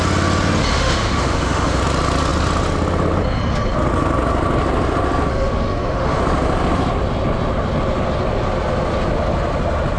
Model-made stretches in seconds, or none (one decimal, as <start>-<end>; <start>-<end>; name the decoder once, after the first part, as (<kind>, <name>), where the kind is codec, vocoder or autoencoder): 0.7-1.8 (autoencoder, DAC-VAE); 5.3-6.2